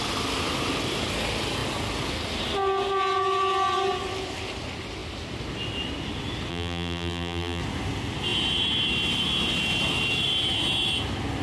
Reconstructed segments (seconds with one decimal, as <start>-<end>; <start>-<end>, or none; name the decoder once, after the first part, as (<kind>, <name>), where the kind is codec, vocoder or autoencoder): 6.5-7.6 (vocoder, BigVGAN v2)

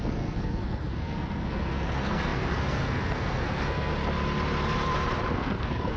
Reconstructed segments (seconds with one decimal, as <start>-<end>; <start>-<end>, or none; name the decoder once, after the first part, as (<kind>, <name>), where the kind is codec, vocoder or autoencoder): 0.0-3.9 (codec, SNAC); 5.3-6.0

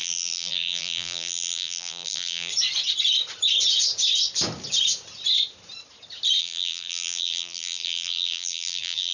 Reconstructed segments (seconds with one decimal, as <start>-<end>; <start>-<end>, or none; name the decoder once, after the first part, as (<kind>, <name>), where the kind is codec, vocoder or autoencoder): 0.0-2.5 (vocoder, BigVGAN v2); 6.4-9.1

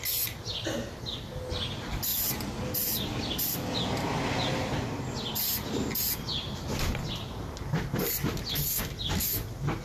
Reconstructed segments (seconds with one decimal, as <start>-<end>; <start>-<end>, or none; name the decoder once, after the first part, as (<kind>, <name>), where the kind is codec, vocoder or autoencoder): none